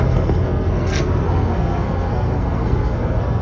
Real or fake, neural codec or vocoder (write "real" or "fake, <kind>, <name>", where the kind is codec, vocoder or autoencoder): fake, codec, SNAC